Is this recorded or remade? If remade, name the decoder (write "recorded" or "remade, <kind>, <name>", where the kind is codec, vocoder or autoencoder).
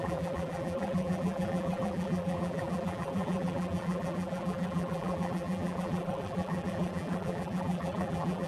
remade, vocoder, BigVGAN v2